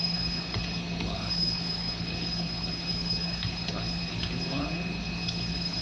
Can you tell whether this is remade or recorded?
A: remade